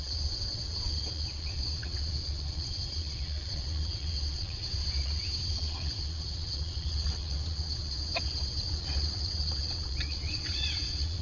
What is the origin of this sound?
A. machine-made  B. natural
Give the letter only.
A